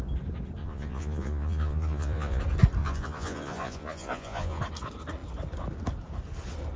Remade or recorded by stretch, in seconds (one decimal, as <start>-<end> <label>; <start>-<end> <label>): 0.0-0.6 recorded; 0.6-2.4 remade; 2.4-2.8 recorded; 2.8-4.6 remade; 4.6-6.8 recorded